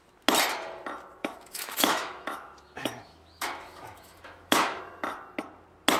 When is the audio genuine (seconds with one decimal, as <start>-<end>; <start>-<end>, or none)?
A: 0.0-1.2; 4.8-6.0